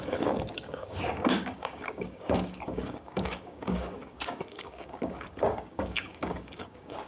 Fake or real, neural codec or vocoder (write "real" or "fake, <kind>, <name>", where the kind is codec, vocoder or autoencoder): fake, codec, DAC